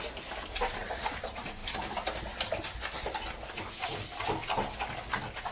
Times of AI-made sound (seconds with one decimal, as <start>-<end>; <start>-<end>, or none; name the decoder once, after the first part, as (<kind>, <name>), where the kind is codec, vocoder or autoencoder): none